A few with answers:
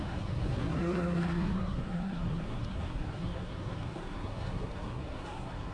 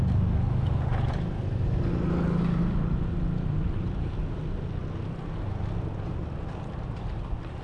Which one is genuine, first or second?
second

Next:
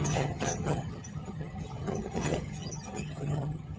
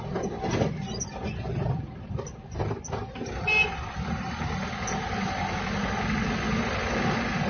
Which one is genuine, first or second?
second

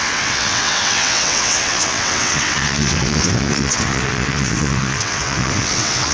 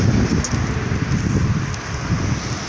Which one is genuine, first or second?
second